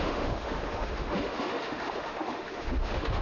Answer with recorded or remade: remade